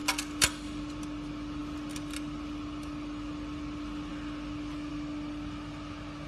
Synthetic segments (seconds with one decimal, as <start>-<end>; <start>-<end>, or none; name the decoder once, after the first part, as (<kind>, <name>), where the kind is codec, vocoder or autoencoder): none